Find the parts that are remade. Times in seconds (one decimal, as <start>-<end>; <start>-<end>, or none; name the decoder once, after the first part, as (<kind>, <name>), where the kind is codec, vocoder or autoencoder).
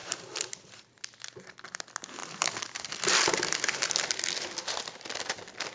2.2-5.7 (vocoder, BigVGAN v2)